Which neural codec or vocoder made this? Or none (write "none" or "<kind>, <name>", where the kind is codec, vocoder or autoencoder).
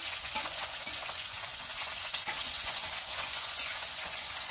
vocoder, Vocos